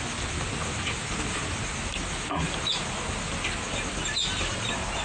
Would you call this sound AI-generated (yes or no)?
no